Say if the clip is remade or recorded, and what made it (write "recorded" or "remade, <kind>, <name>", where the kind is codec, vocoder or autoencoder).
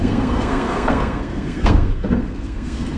remade, codec, SNAC